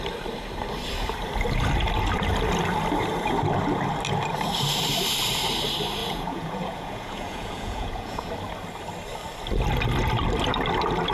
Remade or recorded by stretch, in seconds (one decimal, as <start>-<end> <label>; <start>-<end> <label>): 0.0-6.0 recorded; 6.0-8.3 remade; 8.3-11.1 recorded